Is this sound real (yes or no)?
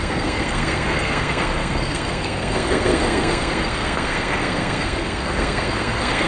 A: no